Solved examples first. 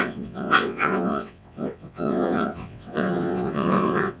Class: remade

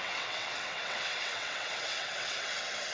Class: remade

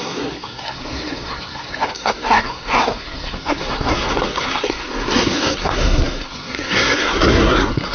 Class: remade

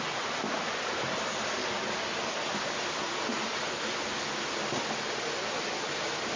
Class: recorded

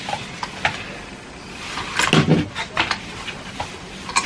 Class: recorded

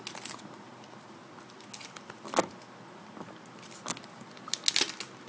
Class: recorded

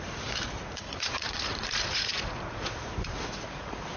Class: remade